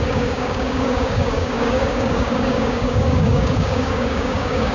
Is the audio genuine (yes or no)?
no